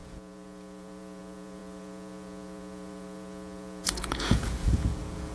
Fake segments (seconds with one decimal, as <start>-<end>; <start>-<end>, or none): 0.0-5.3

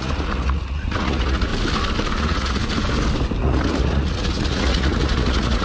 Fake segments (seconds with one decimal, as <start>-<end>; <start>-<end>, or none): 0.0-1.5; 2.2-2.6; 3.4-5.6

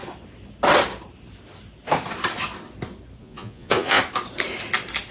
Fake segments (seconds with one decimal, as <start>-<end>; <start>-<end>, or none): 3.2-4.0

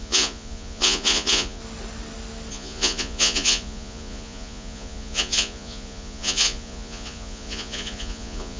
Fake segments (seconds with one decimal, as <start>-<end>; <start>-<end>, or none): 0.0-1.6; 2.5-8.6